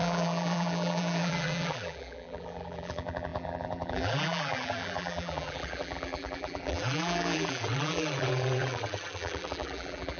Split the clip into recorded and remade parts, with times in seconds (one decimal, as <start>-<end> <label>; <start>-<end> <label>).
0.0-10.2 remade